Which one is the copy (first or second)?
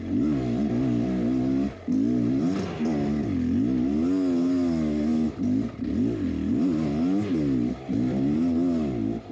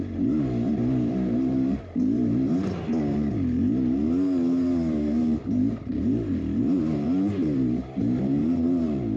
second